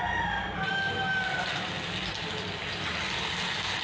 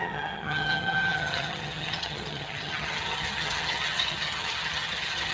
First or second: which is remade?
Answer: second